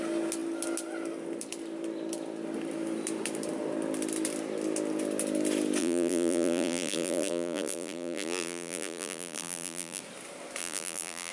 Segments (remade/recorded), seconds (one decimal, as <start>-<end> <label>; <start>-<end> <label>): 0.0-5.8 recorded; 5.8-10.0 remade; 10.0-10.6 recorded; 10.6-11.3 remade

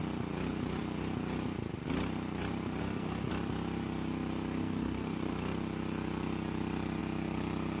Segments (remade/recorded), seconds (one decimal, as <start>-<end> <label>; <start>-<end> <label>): 0.0-2.8 recorded; 2.8-3.3 remade; 3.3-4.6 recorded; 4.6-5.3 remade; 5.3-7.8 recorded

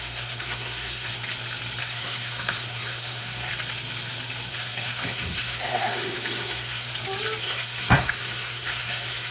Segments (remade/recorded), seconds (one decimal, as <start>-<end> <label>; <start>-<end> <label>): 0.0-1.1 remade; 1.1-1.8 recorded; 1.8-3.5 remade; 3.5-4.5 recorded; 4.5-6.9 remade; 6.9-7.4 recorded; 7.4-9.3 remade

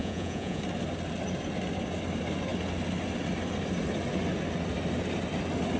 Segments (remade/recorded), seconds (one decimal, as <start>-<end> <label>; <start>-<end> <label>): 0.0-0.6 remade; 0.6-5.8 recorded

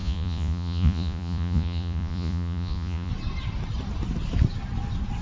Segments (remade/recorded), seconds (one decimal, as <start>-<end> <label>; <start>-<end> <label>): 0.0-3.1 remade; 3.1-5.2 recorded

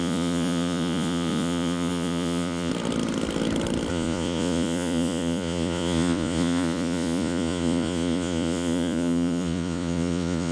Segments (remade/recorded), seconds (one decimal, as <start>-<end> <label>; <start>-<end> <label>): 0.0-2.7 remade; 2.7-3.9 recorded; 3.9-10.5 remade